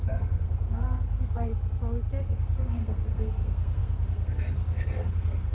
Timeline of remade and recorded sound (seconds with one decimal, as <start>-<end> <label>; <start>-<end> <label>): 0.0-1.5 remade; 1.5-2.2 recorded; 2.2-5.5 remade